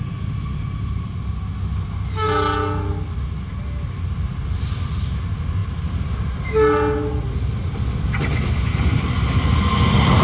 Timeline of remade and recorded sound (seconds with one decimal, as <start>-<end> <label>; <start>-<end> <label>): 0.0-10.2 recorded